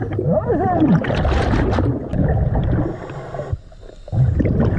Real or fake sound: real